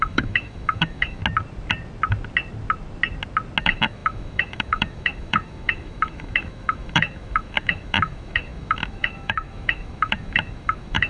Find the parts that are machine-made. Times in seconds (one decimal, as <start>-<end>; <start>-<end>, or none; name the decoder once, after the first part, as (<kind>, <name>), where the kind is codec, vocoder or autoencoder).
0.0-1.2 (autoencoder, DAC-VAE); 3.6-11.1